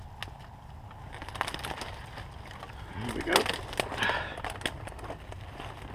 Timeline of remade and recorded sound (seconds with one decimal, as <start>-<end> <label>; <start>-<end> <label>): 0.0-5.9 recorded